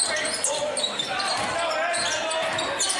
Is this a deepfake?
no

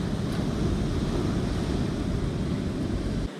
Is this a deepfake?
no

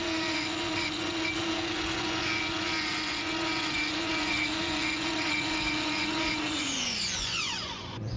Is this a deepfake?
yes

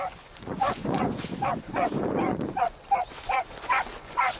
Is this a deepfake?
yes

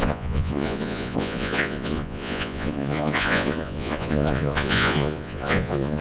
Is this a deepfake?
yes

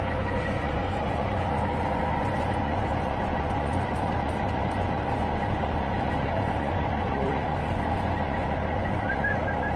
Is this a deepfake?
yes